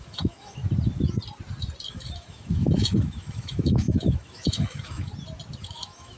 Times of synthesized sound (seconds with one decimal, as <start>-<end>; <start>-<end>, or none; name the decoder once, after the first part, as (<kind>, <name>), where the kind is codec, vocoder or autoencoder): 0.0-0.6 (autoencoder, DAC-VAE); 1.9-5.1; 5.6-6.2